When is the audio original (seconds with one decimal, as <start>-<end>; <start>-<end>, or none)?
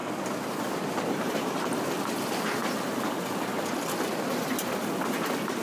0.0-1.1